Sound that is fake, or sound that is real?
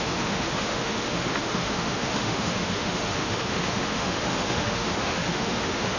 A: fake